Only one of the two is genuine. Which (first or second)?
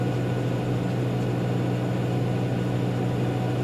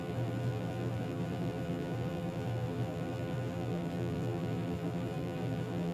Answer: first